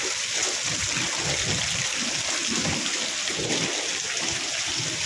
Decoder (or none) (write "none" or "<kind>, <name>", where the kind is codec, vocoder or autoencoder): none